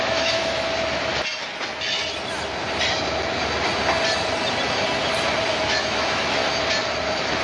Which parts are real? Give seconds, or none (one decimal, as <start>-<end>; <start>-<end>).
1.1-5.5; 6.4-7.0

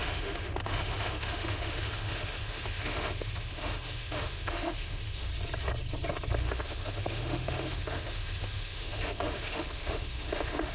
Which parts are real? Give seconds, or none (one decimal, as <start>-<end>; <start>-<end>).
5.3-6.4

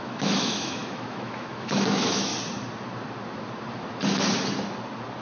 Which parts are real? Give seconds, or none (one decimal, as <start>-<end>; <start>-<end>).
2.3-5.2

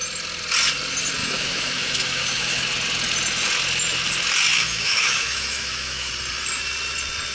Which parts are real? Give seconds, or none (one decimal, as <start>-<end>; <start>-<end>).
0.0-1.2; 2.7-4.5; 6.1-7.3

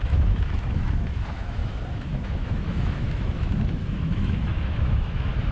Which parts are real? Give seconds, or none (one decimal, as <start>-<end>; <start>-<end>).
none